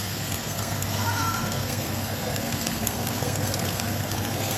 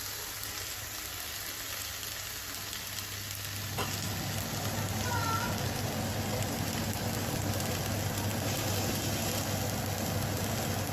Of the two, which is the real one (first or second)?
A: second